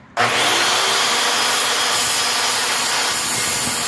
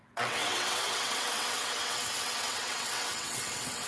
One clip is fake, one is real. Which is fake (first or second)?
second